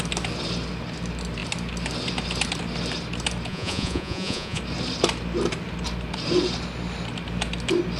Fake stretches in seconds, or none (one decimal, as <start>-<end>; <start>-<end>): 3.5-4.6